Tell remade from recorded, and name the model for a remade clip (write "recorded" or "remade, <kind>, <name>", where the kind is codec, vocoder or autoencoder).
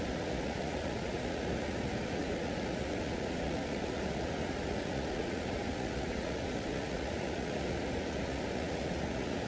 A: remade, vocoder, Vocos